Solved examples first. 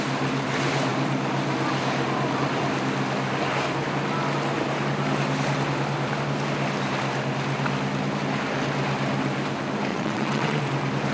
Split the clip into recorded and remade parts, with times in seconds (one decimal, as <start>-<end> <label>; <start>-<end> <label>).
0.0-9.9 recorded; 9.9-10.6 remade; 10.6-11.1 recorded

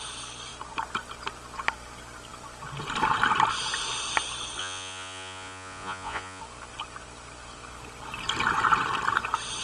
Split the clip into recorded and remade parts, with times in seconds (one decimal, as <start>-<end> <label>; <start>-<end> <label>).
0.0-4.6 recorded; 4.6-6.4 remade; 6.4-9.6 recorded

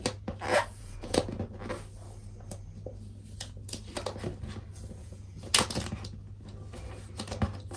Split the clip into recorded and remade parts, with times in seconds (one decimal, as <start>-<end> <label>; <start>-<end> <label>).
0.0-0.5 recorded; 0.5-1.4 remade; 1.4-5.0 recorded; 5.0-5.5 remade; 5.5-7.8 recorded

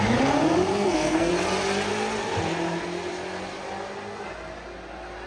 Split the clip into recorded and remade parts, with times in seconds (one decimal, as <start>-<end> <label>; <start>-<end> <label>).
0.0-0.7 recorded; 0.7-1.3 remade; 1.3-5.3 recorded

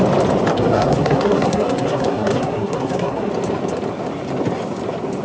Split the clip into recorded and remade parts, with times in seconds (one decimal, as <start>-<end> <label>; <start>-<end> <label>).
0.0-0.5 recorded; 0.5-3.3 remade; 3.3-5.2 recorded

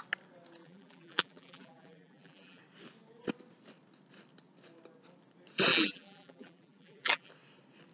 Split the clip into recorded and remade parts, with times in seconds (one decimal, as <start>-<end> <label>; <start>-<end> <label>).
0.0-0.6 recorded; 0.6-2.6 remade; 2.6-5.7 recorded; 5.7-7.3 remade; 7.3-7.9 recorded

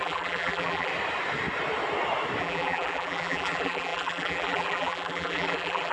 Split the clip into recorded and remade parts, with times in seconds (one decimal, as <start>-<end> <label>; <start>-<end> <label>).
0.0-0.9 remade; 0.9-2.4 recorded; 2.4-5.9 remade